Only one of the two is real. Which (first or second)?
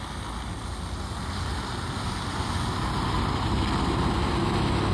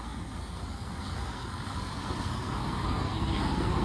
first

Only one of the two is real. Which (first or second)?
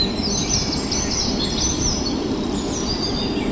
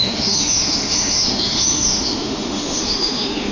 first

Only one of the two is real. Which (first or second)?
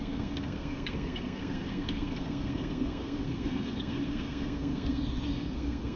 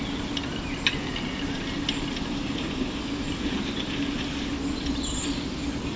second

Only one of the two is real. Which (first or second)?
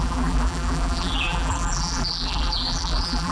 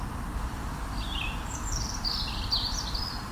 second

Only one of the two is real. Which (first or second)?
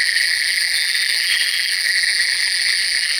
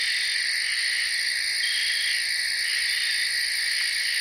second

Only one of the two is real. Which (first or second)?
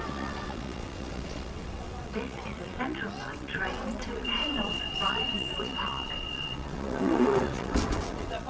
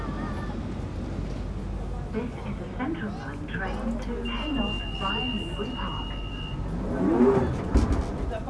second